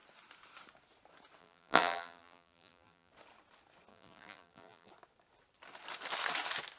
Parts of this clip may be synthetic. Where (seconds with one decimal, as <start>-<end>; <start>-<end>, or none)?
1.4-3.1; 3.9-4.9